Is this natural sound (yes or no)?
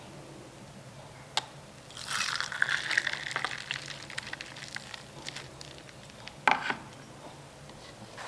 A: yes